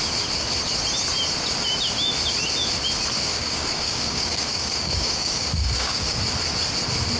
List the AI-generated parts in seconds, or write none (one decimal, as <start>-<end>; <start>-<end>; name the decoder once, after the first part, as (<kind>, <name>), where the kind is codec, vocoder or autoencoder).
3.3-6.2 (codec, DAC)